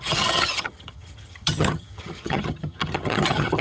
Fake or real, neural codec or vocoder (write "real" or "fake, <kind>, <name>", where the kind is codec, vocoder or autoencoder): fake, vocoder, HiFi-GAN